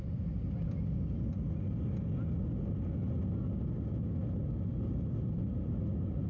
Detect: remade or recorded recorded